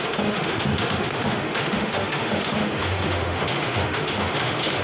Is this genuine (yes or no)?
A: no